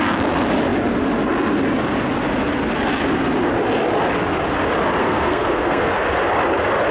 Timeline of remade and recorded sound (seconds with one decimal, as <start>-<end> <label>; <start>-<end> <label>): 0.0-5.0 recorded; 5.0-5.9 remade; 5.9-6.9 recorded